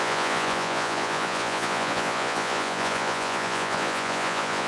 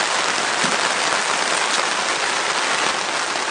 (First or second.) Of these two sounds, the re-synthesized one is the first